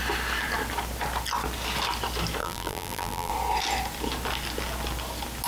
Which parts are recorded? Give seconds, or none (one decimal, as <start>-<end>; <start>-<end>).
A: 0.0-2.4; 3.3-5.5